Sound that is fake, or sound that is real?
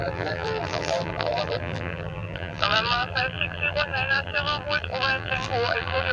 fake